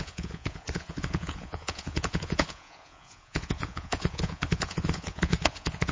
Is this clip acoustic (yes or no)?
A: no